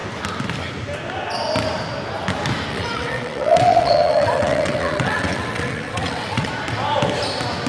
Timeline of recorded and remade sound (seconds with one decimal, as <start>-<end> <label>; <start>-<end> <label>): 0.0-2.7 recorded; 2.7-6.5 remade; 6.5-7.7 recorded